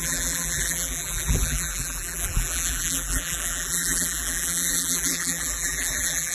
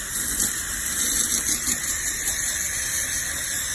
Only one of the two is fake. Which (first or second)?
first